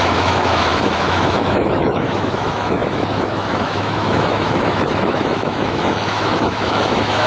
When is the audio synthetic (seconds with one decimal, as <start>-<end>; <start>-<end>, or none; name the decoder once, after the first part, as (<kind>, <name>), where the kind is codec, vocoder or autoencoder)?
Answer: 0.0-7.3 (autoencoder, DAC-VAE)